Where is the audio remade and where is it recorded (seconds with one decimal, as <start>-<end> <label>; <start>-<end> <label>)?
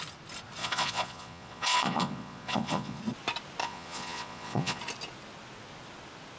0.0-0.6 recorded; 0.6-3.0 remade; 3.0-3.6 recorded; 3.6-4.8 remade; 4.8-6.4 recorded